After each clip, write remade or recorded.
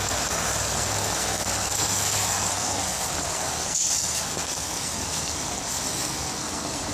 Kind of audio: remade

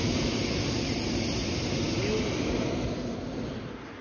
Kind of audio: recorded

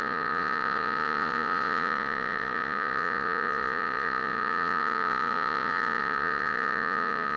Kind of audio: remade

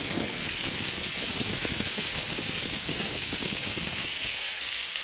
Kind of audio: remade